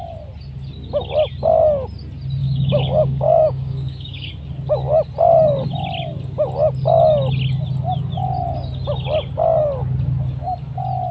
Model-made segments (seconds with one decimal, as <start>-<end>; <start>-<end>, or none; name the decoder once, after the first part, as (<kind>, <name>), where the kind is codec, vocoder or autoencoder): 2.4-4.3 (codec, DAC)